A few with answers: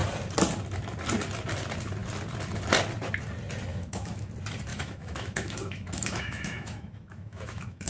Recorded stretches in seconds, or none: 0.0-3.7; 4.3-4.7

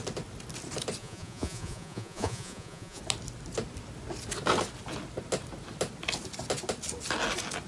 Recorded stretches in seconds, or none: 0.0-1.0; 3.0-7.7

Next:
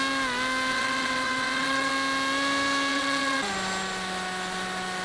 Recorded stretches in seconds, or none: 0.0-0.7; 1.9-2.9; 3.5-5.0

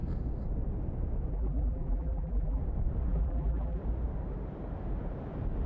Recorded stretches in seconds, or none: 0.0-1.3; 2.6-3.1; 3.8-5.7

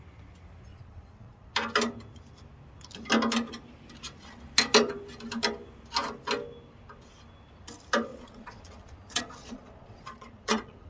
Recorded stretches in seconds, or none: 0.0-0.7; 1.5-8.1

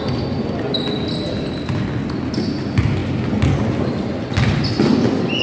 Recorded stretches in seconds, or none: 0.0-5.4

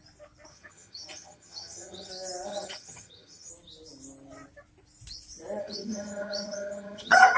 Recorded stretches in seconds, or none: 0.0-0.5; 2.1-2.5; 3.5-5.6